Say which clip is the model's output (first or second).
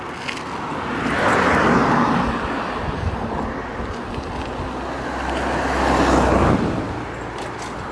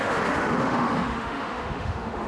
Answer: second